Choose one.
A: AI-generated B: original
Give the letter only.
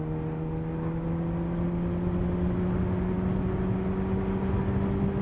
B